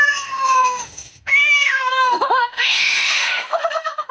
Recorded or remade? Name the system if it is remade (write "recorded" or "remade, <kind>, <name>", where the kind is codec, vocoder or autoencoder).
remade, autoencoder, DAC-VAE